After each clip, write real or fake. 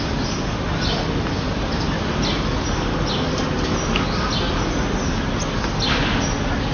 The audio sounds real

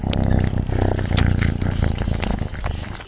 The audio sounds real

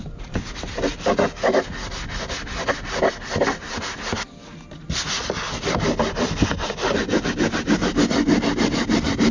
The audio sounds real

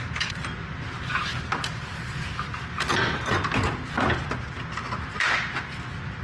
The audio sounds real